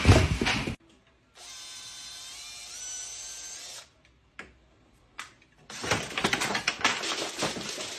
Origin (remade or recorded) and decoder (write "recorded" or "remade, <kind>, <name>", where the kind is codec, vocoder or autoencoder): recorded